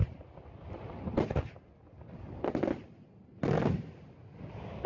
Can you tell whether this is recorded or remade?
recorded